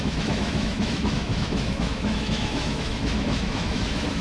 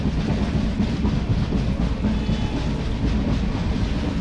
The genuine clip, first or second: second